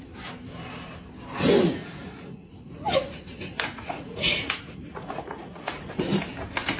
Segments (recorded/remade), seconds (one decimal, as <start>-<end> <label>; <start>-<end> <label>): 0.0-1.8 recorded; 1.8-5.9 remade; 5.9-6.8 recorded